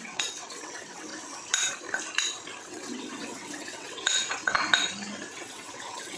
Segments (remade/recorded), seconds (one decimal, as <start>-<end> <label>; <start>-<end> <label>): 0.0-1.1 remade; 1.1-2.6 recorded; 2.6-4.7 remade; 4.7-5.3 recorded; 5.3-6.2 remade